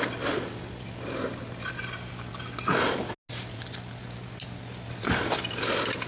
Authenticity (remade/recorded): recorded